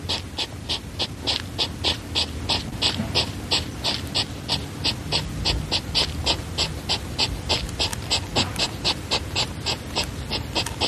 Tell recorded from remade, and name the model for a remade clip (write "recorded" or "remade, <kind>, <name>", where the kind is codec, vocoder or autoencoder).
recorded